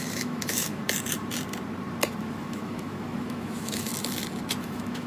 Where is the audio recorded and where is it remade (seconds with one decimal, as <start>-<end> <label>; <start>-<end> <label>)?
0.0-0.8 remade; 0.8-2.2 recorded; 2.2-3.9 remade; 3.9-4.6 recorded; 4.6-5.1 remade